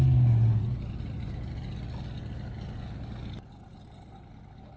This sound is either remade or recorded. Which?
recorded